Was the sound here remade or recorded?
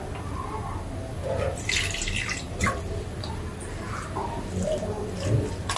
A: recorded